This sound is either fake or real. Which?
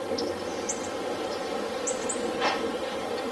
real